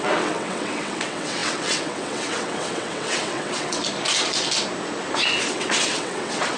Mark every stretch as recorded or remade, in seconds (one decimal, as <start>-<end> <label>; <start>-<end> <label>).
0.0-3.8 remade; 3.8-5.5 recorded; 5.5-6.6 remade